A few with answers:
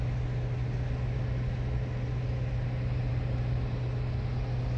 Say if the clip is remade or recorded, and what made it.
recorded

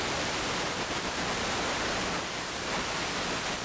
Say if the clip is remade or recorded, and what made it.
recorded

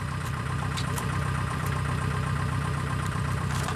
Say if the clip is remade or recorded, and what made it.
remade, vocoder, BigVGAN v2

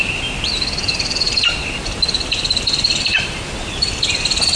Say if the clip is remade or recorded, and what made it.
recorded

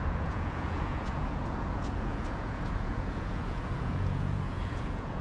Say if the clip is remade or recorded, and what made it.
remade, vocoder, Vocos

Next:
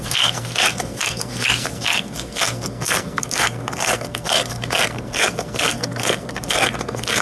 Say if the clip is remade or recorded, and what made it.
remade, codec, SNAC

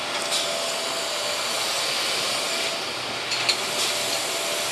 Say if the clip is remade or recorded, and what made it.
recorded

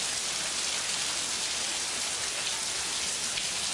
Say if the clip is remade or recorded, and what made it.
recorded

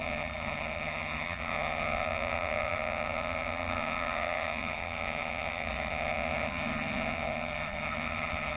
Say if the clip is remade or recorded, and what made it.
remade, vocoder, HiFi-GAN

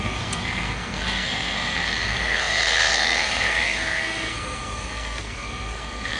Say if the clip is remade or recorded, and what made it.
remade, codec, SNAC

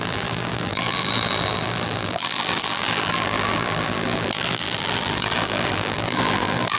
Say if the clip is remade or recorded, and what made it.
remade, vocoder, BigVGAN v2